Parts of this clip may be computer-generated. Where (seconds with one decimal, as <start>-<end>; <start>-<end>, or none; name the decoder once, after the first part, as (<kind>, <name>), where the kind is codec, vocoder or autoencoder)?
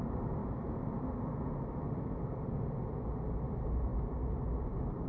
none